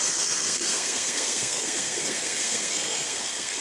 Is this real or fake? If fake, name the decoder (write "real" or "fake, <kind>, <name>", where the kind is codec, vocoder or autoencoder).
fake, codec, SNAC